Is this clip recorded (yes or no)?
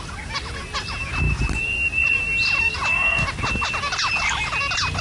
yes